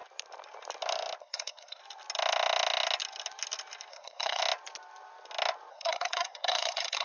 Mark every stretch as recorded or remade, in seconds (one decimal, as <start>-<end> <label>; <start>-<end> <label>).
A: 0.0-1.2 recorded; 1.2-1.8 remade; 1.8-3.9 recorded; 3.9-4.4 remade; 4.4-5.7 recorded; 5.7-7.0 remade